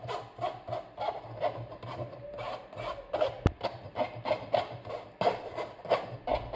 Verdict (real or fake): real